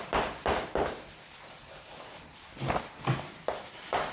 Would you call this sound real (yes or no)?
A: no